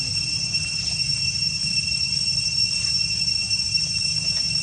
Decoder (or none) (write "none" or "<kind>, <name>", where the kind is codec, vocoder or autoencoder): vocoder, BigVGAN v2